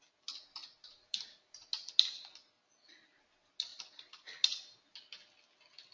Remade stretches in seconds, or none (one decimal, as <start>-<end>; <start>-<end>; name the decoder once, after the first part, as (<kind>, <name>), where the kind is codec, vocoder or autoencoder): none